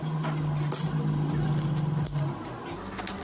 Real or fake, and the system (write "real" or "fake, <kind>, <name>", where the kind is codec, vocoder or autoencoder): real